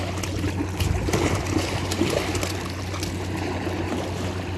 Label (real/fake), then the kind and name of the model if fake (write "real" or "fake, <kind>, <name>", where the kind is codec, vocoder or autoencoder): real